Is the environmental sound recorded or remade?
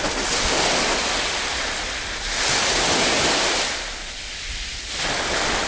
recorded